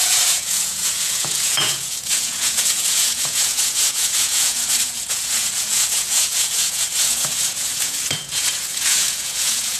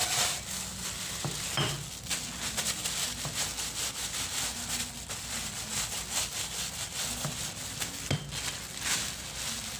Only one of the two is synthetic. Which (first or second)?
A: first